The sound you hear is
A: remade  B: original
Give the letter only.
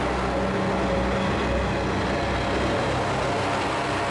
B